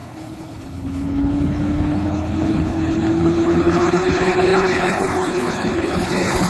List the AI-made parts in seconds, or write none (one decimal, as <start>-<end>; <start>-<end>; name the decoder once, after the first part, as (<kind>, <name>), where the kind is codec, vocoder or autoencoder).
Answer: 0.0-6.5 (codec, HILCodec)